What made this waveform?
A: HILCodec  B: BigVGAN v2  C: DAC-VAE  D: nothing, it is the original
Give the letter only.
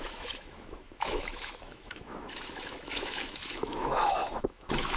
C